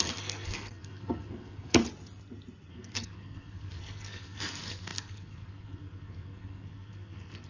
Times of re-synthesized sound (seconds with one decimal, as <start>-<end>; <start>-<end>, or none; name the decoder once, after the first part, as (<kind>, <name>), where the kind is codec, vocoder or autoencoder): 0.0-1.8 (codec, SNAC); 2.7-7.5